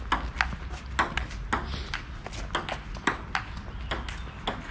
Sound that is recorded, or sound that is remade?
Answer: recorded